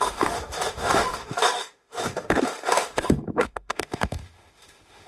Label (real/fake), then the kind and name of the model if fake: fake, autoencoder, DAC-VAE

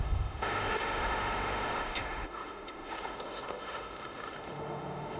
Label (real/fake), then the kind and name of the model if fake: fake, autoencoder, DAC-VAE